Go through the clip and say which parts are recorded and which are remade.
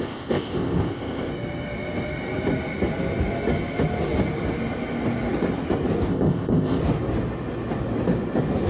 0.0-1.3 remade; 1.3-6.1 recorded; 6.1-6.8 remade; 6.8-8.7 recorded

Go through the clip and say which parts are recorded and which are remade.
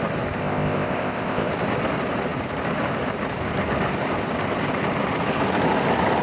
0.0-0.4 recorded; 0.4-1.5 remade; 1.5-6.2 recorded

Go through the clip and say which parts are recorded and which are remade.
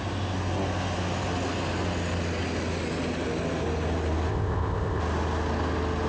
0.0-4.3 recorded; 4.3-5.0 remade; 5.0-6.1 recorded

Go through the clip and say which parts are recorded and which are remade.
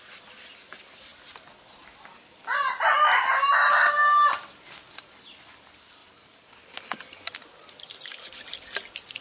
0.0-9.2 recorded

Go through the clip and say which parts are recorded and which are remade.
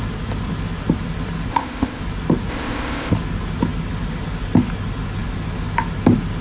0.0-1.5 recorded; 1.5-2.0 remade; 2.0-2.5 recorded; 2.5-3.1 remade; 3.1-6.4 recorded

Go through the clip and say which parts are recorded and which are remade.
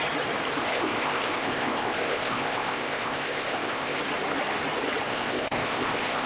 0.0-0.6 recorded; 0.6-4.0 remade; 4.0-5.1 recorded; 5.1-6.3 remade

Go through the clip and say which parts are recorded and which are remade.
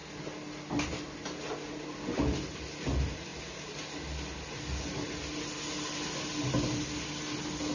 0.0-7.7 recorded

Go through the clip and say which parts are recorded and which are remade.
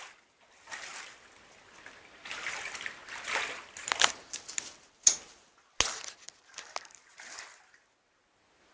0.0-8.7 recorded